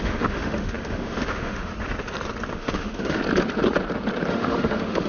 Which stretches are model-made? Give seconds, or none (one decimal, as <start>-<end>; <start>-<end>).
0.0-1.7; 2.5-3.2; 4.3-5.1